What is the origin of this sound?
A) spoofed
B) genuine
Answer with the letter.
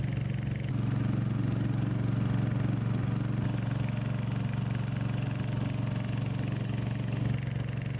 B